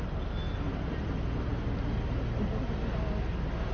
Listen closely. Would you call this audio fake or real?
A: real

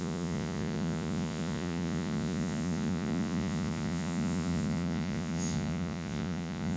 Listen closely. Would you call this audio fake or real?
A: fake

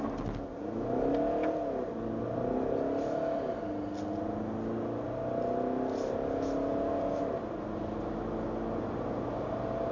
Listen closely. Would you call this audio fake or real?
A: real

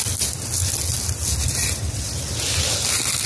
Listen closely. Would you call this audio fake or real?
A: real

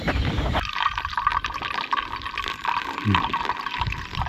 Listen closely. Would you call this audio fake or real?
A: real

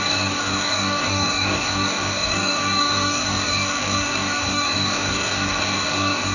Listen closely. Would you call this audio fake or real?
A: fake